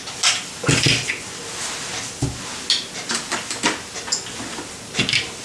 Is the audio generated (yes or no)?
no